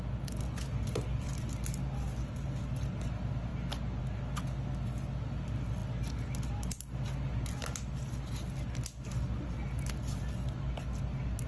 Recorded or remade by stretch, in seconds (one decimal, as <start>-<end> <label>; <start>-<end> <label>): 0.0-11.5 recorded